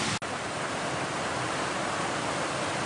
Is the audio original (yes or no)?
yes